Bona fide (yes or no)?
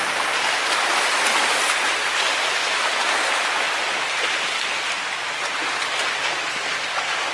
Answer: yes